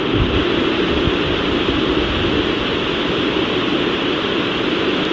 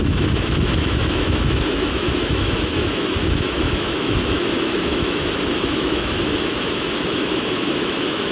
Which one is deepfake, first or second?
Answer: second